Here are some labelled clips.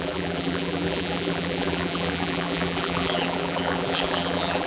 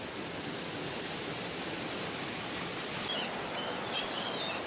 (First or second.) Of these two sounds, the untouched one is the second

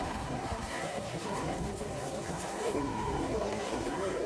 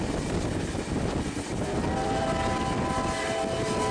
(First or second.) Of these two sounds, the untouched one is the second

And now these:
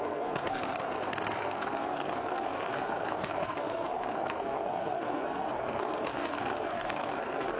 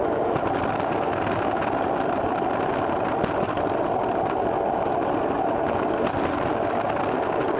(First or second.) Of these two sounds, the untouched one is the second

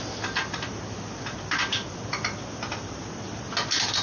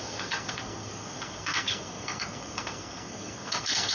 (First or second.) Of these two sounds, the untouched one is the first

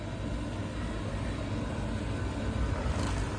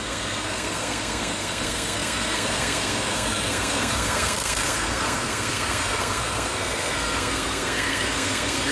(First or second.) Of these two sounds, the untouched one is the first